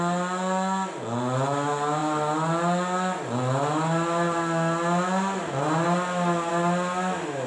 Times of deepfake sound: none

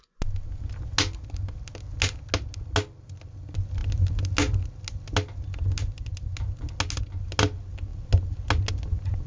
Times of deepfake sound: none

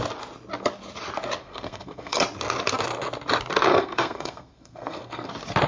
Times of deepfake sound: 1.4-2.2 (codec, SNAC); 3.7-5.3

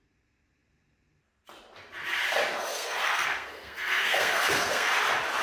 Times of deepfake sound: 2.7-4.9 (codec, SNAC)